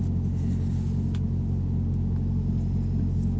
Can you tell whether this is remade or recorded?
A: recorded